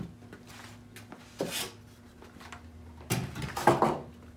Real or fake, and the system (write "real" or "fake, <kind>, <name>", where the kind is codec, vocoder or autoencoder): real